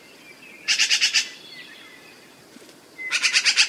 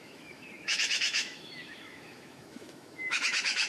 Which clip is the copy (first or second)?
second